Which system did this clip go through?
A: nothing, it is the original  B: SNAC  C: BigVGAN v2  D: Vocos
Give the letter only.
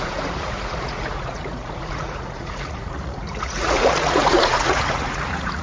D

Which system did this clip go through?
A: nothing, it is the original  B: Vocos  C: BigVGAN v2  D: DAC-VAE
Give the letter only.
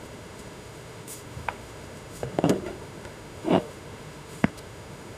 D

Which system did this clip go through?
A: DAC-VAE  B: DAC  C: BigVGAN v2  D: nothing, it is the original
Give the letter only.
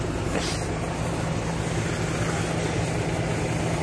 D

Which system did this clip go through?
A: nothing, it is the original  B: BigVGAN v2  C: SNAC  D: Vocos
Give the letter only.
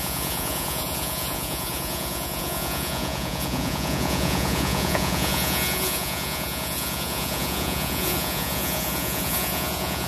D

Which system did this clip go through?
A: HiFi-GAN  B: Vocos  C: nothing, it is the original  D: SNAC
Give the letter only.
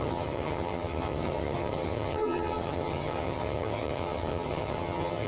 A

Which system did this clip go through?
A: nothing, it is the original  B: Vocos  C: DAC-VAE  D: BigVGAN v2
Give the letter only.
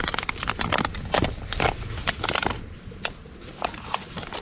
A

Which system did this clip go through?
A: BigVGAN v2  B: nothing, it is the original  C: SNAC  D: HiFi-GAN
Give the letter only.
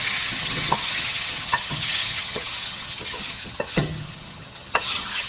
D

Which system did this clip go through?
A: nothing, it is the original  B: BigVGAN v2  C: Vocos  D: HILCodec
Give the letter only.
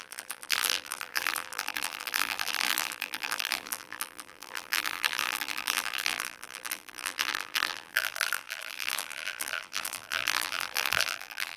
B